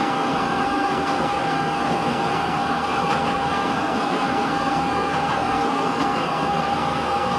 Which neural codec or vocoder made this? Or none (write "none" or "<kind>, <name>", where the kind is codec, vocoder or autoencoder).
codec, SNAC